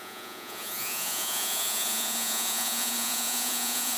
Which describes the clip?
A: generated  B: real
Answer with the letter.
A